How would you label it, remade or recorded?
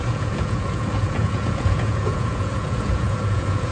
remade